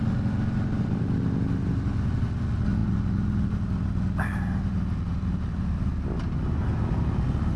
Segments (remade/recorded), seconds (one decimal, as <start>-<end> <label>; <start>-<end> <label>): 0.0-7.6 recorded